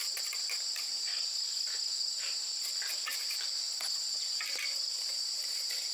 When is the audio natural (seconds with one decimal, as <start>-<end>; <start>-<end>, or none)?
1.1-4.1